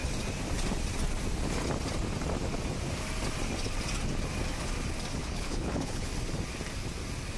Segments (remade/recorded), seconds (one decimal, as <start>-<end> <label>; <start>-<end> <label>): 0.0-5.2 recorded; 5.2-6.1 remade; 6.1-7.4 recorded